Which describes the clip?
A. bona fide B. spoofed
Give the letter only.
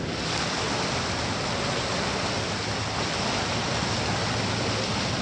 A